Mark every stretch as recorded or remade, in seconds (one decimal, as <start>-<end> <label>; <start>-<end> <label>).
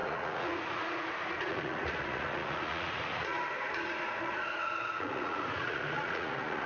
0.0-6.7 remade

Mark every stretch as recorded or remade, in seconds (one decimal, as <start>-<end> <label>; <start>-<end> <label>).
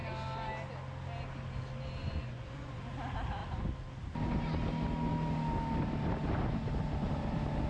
0.0-2.0 recorded; 2.0-2.9 remade; 2.9-7.7 recorded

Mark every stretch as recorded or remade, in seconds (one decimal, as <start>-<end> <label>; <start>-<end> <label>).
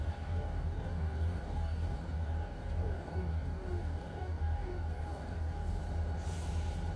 0.0-5.8 remade; 5.8-7.0 recorded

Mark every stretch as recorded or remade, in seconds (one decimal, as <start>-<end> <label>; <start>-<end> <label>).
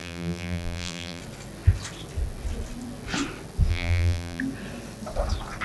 0.0-1.2 remade; 1.2-3.7 recorded; 3.7-4.4 remade; 4.4-5.6 recorded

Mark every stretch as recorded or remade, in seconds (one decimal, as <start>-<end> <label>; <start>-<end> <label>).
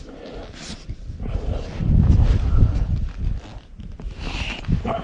0.0-5.0 recorded